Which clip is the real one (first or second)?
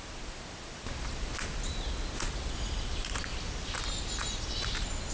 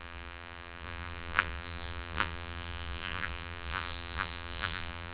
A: first